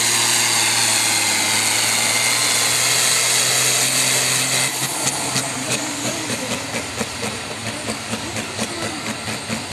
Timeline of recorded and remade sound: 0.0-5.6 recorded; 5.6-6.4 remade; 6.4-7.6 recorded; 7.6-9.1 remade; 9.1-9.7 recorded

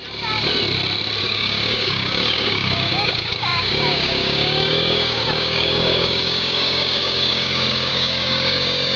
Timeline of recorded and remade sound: 0.0-1.2 recorded; 1.2-9.0 remade

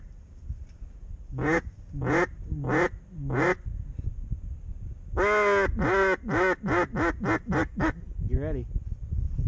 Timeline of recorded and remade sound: 0.0-7.6 recorded; 7.6-8.3 remade; 8.3-9.5 recorded

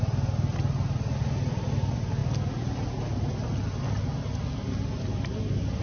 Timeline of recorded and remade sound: 0.0-5.8 recorded

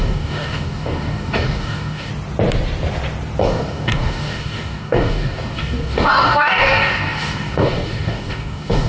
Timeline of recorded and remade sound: 0.0-2.1 remade; 2.1-3.4 recorded; 3.4-8.9 remade

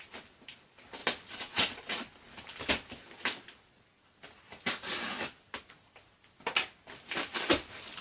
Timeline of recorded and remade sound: 0.0-8.0 recorded

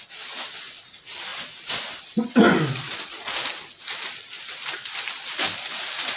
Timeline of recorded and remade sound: 0.0-6.2 recorded

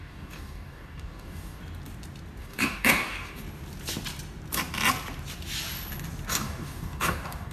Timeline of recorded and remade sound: 0.0-1.6 remade; 1.6-2.4 recorded; 2.4-3.4 remade; 3.4-6.3 recorded; 6.3-7.5 remade